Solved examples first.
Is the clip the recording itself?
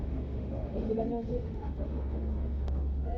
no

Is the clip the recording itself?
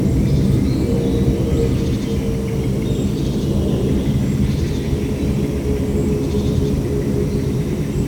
yes